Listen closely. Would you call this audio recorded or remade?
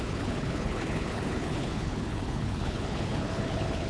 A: remade